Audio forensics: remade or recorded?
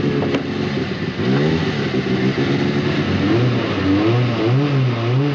recorded